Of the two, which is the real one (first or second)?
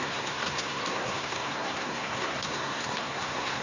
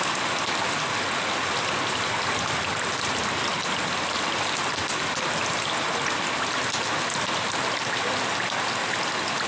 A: second